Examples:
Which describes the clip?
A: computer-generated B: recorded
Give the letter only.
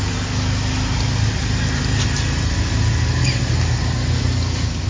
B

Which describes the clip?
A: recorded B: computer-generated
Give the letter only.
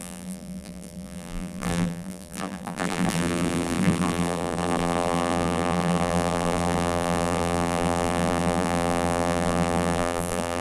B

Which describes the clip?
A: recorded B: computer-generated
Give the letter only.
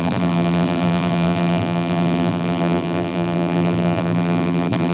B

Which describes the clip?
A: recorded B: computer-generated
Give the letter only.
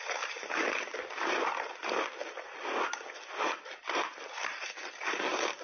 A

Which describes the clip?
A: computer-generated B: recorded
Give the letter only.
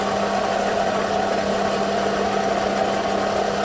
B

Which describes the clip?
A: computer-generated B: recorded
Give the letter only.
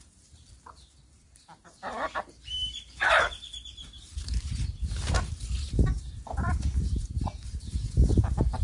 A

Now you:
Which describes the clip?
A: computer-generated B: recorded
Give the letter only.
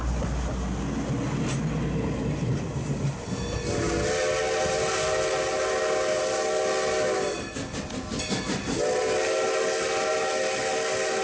B